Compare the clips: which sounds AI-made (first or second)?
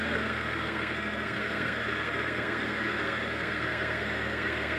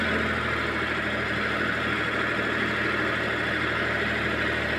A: first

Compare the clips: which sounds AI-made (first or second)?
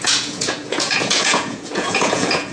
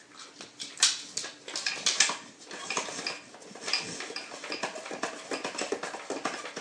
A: first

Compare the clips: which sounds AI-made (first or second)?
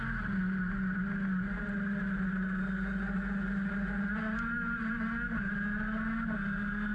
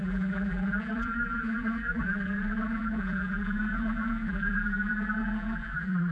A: second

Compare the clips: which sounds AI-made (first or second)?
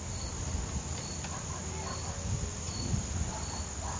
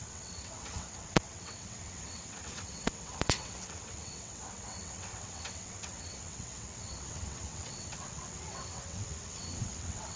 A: second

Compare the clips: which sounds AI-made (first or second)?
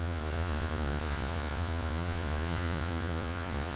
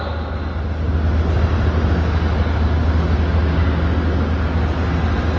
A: first